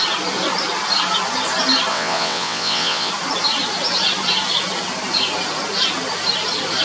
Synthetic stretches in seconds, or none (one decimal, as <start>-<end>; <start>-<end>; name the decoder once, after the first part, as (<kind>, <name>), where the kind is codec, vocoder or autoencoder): 1.9-3.1 (vocoder, WaveNeXt)